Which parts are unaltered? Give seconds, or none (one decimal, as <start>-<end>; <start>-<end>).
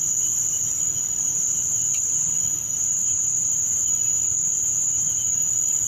0.0-5.9